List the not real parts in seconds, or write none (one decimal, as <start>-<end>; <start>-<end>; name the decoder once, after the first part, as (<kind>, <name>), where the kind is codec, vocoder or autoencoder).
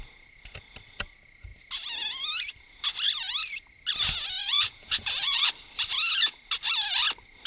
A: 4.4-5.5 (vocoder, Vocos)